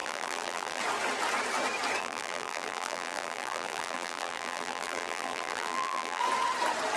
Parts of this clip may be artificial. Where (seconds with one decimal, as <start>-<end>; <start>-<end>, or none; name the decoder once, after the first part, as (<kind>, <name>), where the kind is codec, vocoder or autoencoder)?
0.0-0.8 (vocoder, BigVGAN v2); 2.0-6.2